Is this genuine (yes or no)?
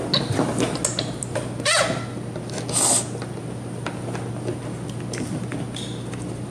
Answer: yes